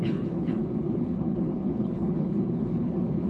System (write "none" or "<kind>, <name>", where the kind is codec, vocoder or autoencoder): codec, HILCodec